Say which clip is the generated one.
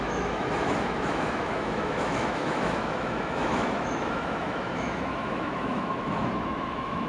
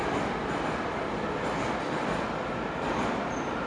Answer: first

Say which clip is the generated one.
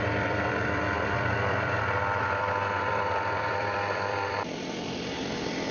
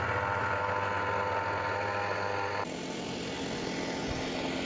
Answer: first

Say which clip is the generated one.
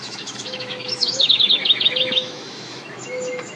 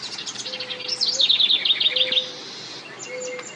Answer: first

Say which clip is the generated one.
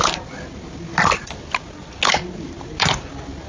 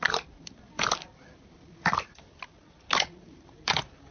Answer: second